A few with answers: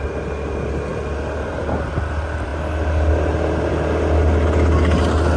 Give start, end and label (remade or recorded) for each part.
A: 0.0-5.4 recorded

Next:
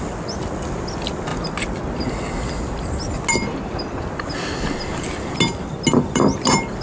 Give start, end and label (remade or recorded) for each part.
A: 0.0-6.8 recorded

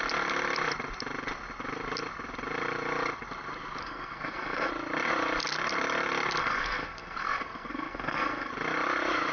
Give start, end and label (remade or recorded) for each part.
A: 0.0-3.8 recorded; 3.8-4.7 remade; 4.7-6.4 recorded; 6.4-8.5 remade; 8.5-9.3 recorded

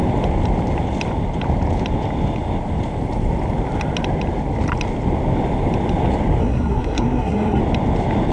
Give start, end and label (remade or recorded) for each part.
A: 0.0-6.4 recorded; 6.4-7.6 remade; 7.6-8.3 recorded

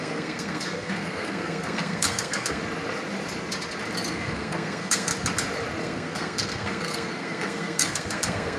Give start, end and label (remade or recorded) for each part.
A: 0.0-2.6 remade; 2.6-4.1 recorded; 4.1-5.1 remade; 5.1-5.8 recorded; 5.8-8.6 remade